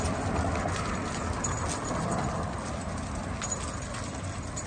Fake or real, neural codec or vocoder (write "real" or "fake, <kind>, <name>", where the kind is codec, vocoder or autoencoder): real